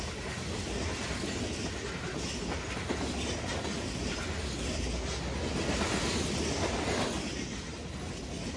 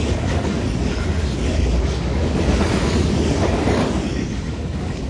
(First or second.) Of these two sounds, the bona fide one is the first